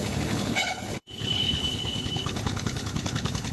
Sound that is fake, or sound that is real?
fake